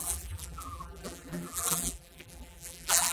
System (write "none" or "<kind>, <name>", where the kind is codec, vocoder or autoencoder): vocoder, BigVGAN v2